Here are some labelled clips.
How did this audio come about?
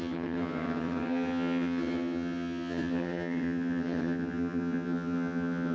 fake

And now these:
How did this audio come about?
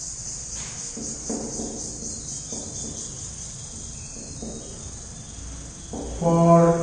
real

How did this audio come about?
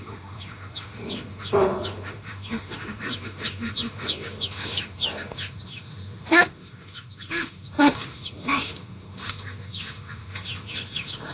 fake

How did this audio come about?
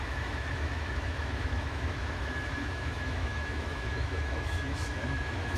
fake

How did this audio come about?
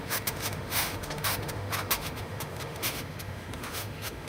fake